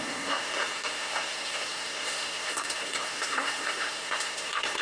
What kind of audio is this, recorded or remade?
remade